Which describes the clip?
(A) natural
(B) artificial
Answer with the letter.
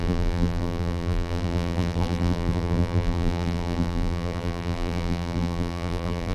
B